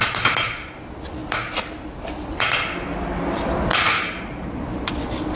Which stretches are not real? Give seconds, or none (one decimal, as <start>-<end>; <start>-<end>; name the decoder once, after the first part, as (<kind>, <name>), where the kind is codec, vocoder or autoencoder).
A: none